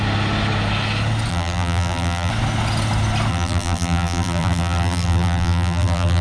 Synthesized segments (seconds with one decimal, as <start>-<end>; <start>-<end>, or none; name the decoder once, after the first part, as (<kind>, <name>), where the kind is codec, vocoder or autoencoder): 1.3-2.3 (vocoder, BigVGAN v2); 3.3-6.2